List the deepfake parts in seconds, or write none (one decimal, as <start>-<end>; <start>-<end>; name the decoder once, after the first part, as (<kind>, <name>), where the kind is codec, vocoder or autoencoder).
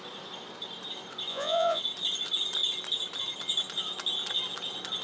1.3-1.8 (vocoder, Vocos)